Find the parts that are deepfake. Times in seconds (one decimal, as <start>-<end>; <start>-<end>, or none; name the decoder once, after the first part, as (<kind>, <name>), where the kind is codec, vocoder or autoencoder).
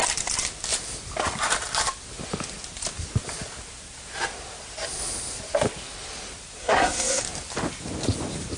6.6-7.2 (codec, SNAC)